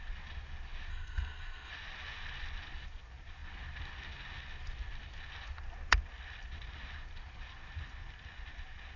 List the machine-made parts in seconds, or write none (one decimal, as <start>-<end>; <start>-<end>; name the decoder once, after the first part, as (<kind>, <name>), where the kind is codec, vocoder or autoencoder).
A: 0.9-1.7 (codec, SNAC)